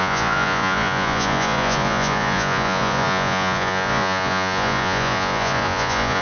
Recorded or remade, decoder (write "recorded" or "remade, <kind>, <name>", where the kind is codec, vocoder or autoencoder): remade, vocoder, Vocos